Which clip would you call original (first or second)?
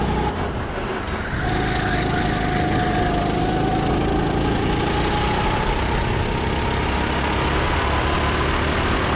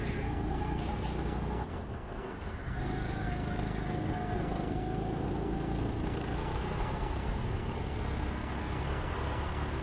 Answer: first